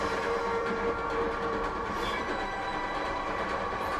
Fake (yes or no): yes